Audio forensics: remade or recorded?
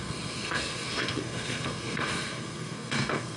remade